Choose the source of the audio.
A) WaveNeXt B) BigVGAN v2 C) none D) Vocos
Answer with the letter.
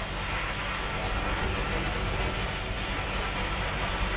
C